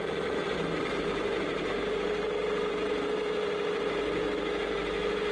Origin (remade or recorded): recorded